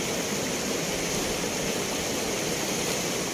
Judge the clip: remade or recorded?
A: recorded